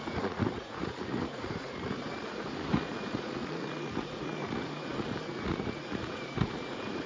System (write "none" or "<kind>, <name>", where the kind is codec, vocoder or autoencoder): vocoder, Vocos